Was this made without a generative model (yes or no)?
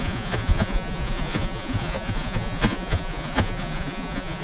no